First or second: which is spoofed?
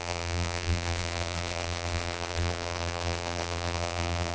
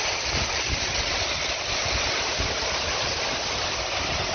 first